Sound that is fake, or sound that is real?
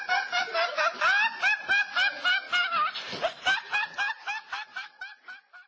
real